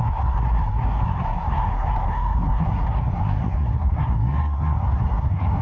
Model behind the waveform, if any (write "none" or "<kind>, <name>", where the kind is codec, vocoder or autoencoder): codec, SNAC